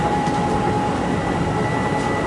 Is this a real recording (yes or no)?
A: yes